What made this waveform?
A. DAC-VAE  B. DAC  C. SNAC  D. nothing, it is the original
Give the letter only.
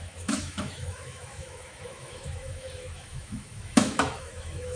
A